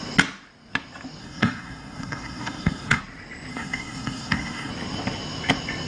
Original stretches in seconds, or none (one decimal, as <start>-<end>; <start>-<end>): 0.0-1.2; 3.0-3.5; 4.7-5.9